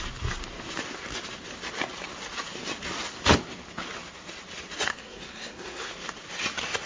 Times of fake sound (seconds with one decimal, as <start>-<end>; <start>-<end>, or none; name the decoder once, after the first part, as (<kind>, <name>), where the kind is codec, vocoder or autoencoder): 4.9-5.9 (codec, SNAC)